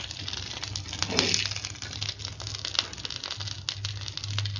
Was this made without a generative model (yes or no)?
yes